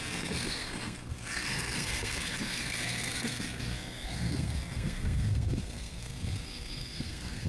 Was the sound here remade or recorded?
remade